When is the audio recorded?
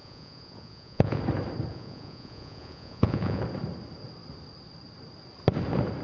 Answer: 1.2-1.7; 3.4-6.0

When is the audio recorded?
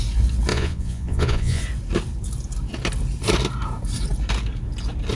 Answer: 0.0-0.5; 1.6-5.1